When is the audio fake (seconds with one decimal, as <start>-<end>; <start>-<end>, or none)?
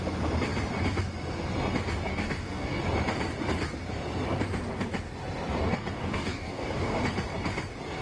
2.1-2.8; 5.6-7.0